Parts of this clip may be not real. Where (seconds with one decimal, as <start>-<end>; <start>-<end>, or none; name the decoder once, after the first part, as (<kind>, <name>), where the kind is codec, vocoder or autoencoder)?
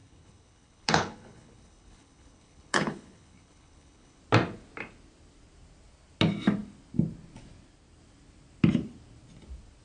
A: 0.0-4.2 (codec, HILCodec)